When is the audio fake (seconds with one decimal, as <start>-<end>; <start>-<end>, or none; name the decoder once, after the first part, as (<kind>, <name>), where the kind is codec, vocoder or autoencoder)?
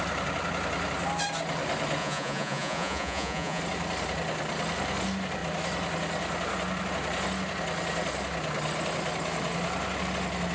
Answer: 2.0-3.6 (vocoder, Vocos)